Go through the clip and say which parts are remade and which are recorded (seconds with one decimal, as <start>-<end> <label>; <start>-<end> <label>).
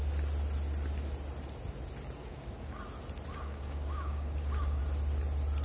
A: 0.0-2.2 recorded; 2.2-2.8 remade; 2.8-3.3 recorded; 3.3-4.8 remade; 4.8-5.6 recorded